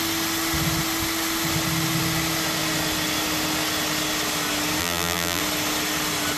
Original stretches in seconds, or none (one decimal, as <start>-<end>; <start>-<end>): 0.0-4.8; 5.4-6.4